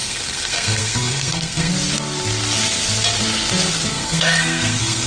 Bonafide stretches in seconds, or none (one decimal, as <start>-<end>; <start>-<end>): 1.7-3.9

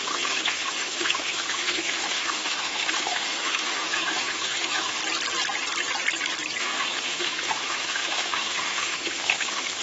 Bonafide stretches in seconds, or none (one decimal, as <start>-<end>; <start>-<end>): 5.0-6.6

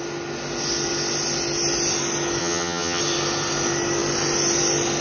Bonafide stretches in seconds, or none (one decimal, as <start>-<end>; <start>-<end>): 0.0-2.4; 3.0-5.0

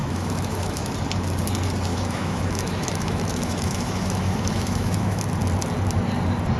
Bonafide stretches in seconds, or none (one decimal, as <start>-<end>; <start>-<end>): 0.9-1.9; 5.2-6.6

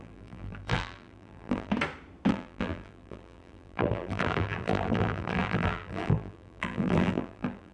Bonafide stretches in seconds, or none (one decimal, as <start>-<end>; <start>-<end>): 1.7-2.3

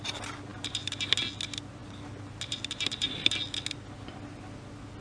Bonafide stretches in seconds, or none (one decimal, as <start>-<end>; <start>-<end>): 0.0-0.5; 1.0-1.8; 2.4-5.0